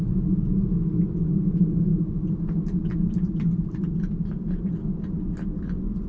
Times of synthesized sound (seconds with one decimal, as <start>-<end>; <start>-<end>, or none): none